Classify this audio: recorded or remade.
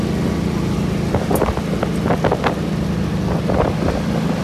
recorded